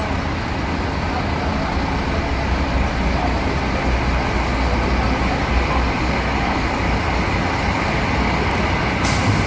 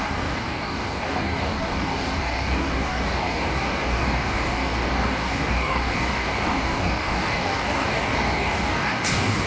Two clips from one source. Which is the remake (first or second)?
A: second